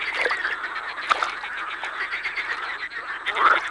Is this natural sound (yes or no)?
yes